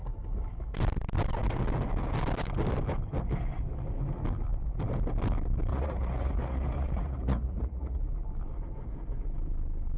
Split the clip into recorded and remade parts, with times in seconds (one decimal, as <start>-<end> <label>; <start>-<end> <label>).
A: 0.0-5.7 recorded; 5.7-8.0 remade; 8.0-10.0 recorded